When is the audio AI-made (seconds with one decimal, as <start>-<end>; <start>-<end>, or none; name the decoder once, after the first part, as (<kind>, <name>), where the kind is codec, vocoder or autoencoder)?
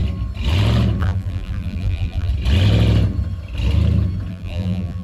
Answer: 1.0-2.3 (vocoder, BigVGAN v2); 4.3-5.0